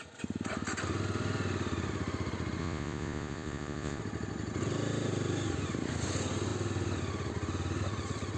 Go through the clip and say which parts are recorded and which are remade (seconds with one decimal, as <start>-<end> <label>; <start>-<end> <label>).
0.0-2.6 recorded; 2.6-4.0 remade; 4.0-8.4 recorded